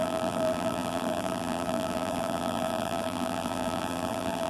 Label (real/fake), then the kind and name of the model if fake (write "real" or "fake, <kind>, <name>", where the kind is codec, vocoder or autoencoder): fake, vocoder, BigVGAN v2